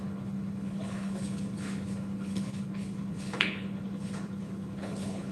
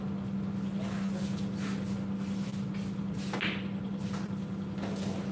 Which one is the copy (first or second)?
first